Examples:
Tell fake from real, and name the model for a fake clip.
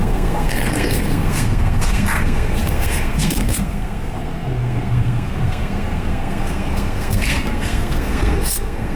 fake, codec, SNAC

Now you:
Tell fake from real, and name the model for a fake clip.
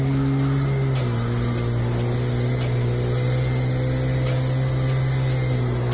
real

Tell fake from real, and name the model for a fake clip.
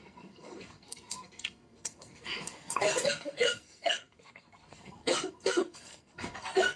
fake, codec, SNAC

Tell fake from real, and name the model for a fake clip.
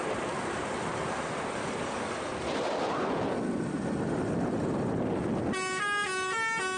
real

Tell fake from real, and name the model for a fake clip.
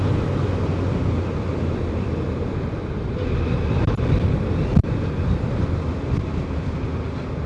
real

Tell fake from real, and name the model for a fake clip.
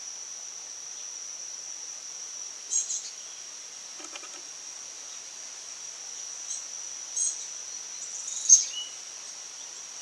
real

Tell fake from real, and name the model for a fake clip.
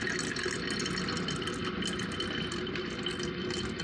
real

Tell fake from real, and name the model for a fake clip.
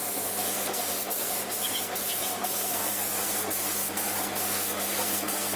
fake, codec, SNAC